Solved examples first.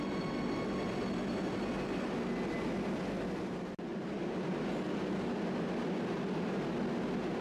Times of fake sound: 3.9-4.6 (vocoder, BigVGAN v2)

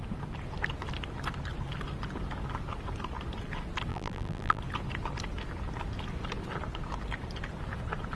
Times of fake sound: 3.9-4.6 (vocoder, BigVGAN v2)

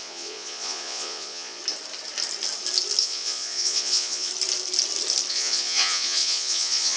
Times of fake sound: 0.0-1.6 (vocoder, Vocos); 3.0-4.3; 5.3-7.0

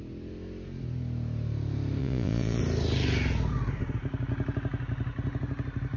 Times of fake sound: 2.0-2.6 (vocoder, Vocos)

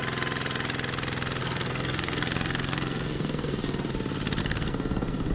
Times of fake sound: 1.4-3.9 (codec, SNAC); 4.4-5.3

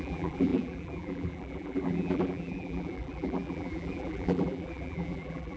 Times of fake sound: 0.0-5.6 (vocoder, BigVGAN v2)